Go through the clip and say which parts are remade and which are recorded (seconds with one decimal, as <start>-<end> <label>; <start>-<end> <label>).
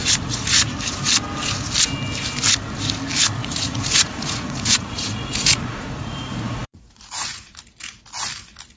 0.0-0.7 remade; 0.7-3.4 recorded; 3.4-7.6 remade; 7.6-8.8 recorded